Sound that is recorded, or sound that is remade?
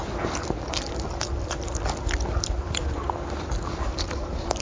remade